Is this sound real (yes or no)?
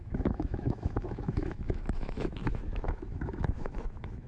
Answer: no